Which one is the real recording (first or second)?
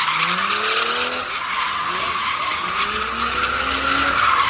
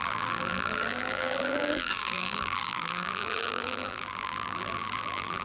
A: first